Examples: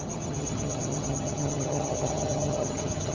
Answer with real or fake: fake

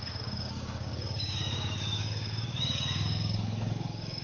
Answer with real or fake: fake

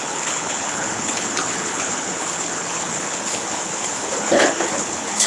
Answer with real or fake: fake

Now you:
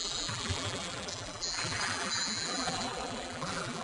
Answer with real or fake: fake